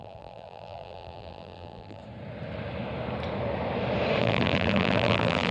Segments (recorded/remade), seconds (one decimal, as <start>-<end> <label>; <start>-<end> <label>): 0.0-2.0 remade; 2.0-4.2 recorded; 4.2-5.5 remade